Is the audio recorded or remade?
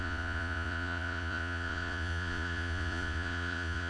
remade